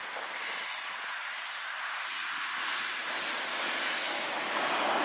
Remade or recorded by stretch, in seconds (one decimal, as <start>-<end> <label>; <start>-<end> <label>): 0.0-3.5 recorded; 3.5-4.3 remade; 4.3-5.0 recorded

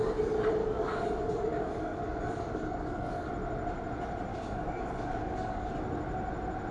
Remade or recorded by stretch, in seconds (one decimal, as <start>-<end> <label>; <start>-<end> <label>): 0.0-0.6 recorded; 0.6-3.3 remade; 3.3-4.3 recorded; 4.3-5.7 remade; 5.7-6.7 recorded